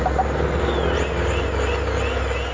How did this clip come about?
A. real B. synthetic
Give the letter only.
A